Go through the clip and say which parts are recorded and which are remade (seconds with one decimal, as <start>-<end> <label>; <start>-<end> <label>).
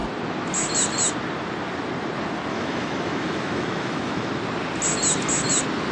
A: 0.0-2.5 recorded; 2.5-4.3 remade; 4.3-5.9 recorded